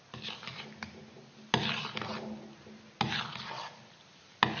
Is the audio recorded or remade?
recorded